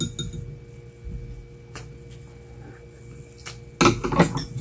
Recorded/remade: recorded